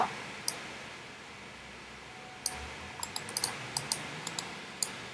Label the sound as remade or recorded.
recorded